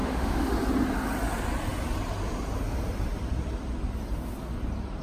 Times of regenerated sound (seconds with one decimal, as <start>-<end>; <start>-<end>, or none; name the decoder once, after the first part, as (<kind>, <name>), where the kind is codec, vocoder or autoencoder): 0.0-0.5 (autoencoder, DAC-VAE)